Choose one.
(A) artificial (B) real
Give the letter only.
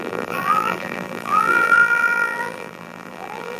A